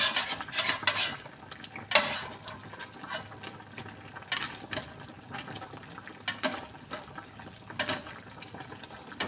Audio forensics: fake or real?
real